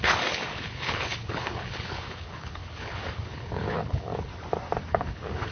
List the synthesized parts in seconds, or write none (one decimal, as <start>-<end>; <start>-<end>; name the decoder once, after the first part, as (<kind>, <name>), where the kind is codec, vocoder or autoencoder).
0.0-4.3 (codec, HILCodec); 4.9-5.5